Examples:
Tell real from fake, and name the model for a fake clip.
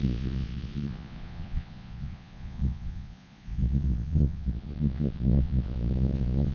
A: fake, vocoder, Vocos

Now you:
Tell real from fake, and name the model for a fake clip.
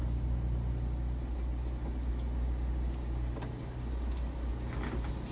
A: real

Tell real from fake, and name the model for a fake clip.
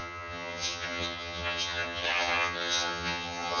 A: fake, vocoder, HiFi-GAN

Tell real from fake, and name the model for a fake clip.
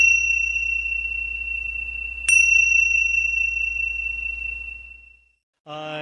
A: real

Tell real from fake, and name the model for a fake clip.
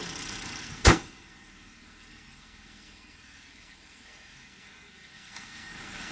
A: fake, codec, SNAC